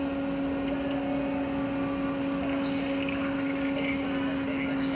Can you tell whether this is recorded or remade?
recorded